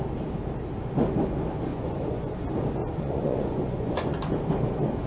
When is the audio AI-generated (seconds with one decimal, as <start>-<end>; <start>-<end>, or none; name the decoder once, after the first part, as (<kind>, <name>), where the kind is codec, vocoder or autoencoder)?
1.7-2.4 (vocoder, Vocos); 2.8-4.2